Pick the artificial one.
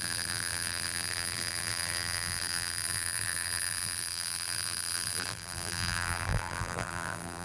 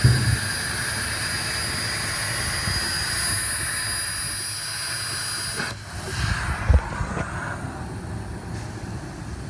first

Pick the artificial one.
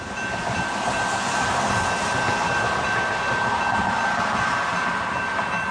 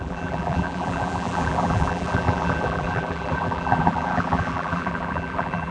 second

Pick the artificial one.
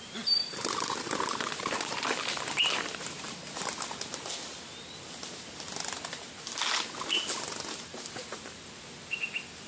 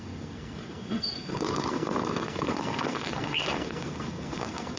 second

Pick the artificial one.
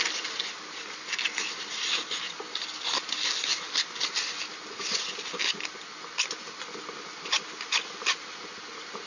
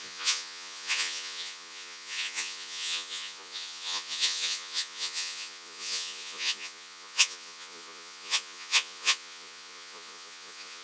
second